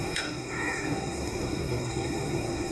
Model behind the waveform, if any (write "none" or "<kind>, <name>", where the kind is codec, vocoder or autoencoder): codec, SNAC